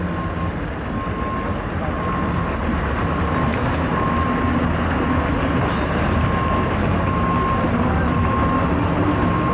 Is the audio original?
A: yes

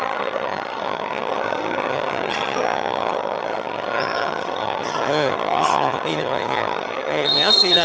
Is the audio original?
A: no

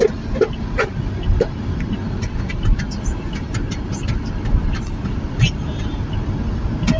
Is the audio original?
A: yes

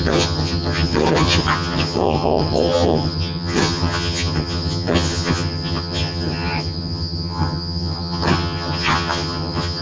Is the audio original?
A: no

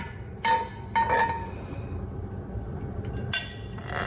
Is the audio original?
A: yes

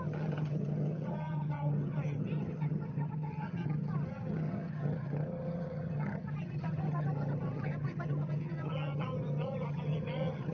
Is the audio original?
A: no